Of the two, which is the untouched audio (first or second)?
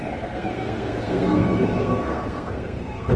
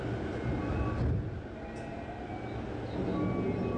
second